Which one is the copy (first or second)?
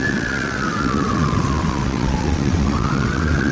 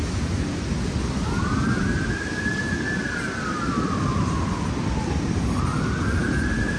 first